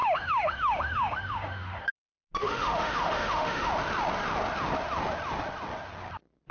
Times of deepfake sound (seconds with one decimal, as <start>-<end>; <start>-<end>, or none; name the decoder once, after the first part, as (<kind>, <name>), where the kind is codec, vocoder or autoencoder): 0.0-1.9 (autoencoder, DAC-VAE); 2.4-3.7